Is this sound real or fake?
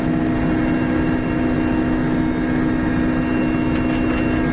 real